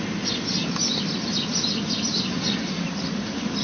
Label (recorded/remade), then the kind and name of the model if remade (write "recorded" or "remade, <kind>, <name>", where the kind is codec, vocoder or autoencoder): recorded